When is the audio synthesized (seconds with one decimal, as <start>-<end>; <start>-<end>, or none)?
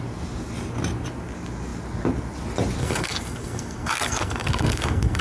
2.8-5.2